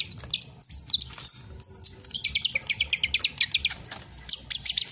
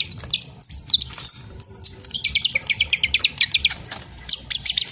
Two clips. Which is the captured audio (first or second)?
first